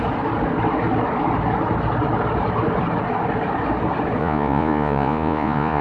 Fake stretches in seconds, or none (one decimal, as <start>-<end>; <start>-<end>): 4.2-5.8